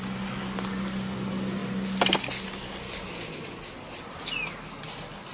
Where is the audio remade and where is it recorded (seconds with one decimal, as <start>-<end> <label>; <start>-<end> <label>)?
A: 0.0-5.3 recorded